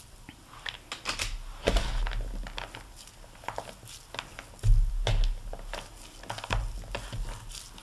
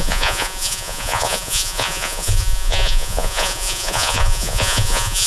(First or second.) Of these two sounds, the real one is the first